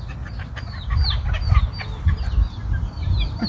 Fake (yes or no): no